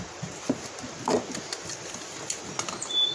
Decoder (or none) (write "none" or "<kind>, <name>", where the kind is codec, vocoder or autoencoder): none